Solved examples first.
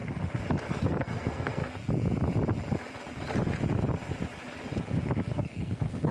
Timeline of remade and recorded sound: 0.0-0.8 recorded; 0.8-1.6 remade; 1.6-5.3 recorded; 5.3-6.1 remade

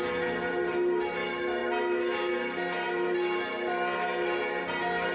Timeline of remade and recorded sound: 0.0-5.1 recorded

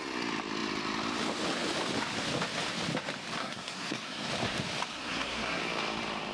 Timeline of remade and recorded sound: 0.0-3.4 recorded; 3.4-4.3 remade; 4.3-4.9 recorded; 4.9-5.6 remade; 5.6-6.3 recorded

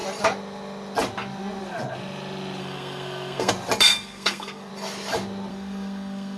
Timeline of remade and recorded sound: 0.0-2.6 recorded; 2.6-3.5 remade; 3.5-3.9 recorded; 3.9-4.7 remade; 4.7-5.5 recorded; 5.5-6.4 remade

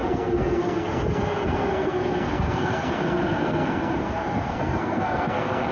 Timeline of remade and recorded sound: 0.0-5.7 remade

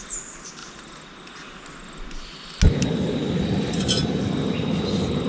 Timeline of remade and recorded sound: 0.0-5.3 recorded

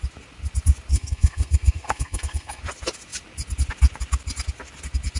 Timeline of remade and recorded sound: 0.0-0.9 recorded; 0.9-2.6 remade; 2.6-5.2 recorded